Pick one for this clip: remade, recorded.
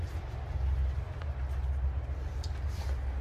recorded